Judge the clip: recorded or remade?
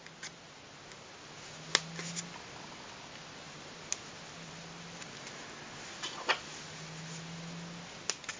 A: recorded